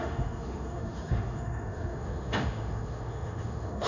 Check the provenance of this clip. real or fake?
fake